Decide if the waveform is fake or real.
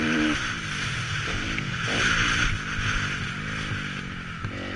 real